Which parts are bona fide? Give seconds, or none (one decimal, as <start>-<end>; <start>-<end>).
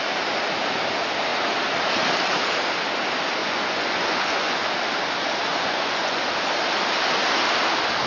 0.0-3.4; 4.7-5.5; 6.2-8.1